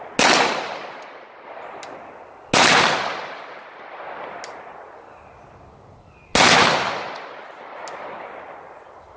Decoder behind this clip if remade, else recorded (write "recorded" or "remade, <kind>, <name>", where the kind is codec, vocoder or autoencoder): recorded